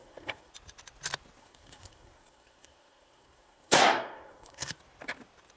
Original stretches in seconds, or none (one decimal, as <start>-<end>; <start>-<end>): 0.5-1.4; 4.8-5.6